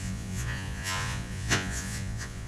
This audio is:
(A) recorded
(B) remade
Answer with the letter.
B